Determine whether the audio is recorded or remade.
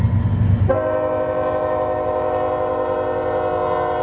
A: recorded